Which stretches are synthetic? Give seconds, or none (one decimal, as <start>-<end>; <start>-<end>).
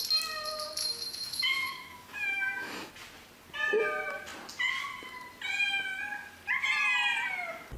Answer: 0.8-2.9